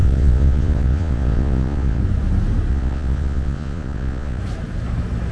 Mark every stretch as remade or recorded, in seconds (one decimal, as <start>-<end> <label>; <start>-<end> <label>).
0.0-2.0 remade; 2.0-2.7 recorded; 2.7-4.4 remade; 4.4-5.3 recorded